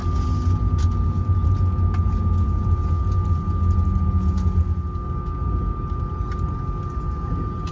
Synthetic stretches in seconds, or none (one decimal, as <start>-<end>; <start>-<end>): none